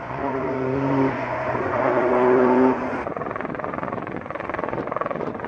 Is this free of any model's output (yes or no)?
no